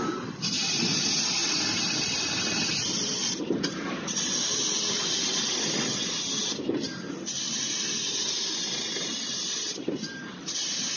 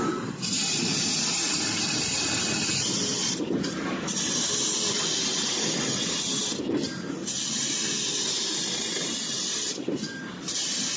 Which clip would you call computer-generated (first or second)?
first